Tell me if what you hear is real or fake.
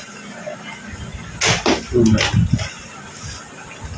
real